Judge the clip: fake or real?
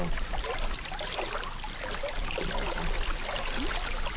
real